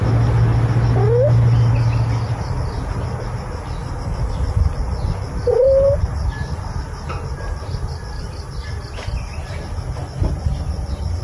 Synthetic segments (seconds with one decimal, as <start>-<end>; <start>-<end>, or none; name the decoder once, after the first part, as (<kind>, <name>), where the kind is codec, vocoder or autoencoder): 3.8-4.3 (vocoder, BigVGAN v2)